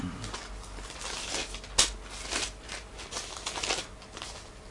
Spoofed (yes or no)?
no